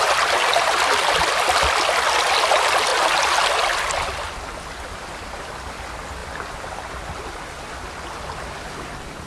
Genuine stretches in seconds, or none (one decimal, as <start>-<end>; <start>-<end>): 0.0-9.3